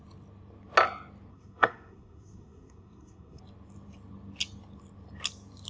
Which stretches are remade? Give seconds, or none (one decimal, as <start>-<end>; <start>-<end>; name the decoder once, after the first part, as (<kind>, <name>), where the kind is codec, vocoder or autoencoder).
1.3-3.4 (codec, SNAC)